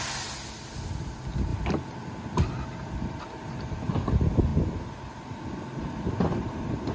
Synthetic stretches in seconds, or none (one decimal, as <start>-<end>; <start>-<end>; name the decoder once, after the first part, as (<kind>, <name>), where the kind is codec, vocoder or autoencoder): none